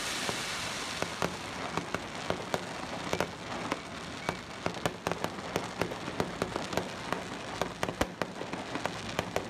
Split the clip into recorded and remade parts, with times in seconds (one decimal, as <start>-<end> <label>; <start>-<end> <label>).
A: 0.0-9.5 recorded